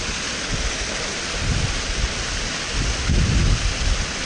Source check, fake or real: real